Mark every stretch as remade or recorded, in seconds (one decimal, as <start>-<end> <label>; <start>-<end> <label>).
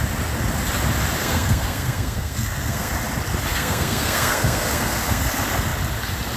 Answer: 0.0-1.2 recorded; 1.2-2.9 remade; 2.9-3.5 recorded; 3.5-5.3 remade; 5.3-6.4 recorded